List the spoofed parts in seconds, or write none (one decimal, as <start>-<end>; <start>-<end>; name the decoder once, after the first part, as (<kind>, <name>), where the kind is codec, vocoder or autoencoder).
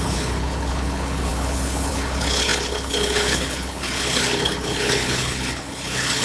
0.0-6.2 (codec, HILCodec)